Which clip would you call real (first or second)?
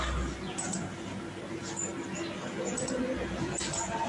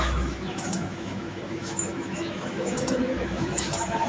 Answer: first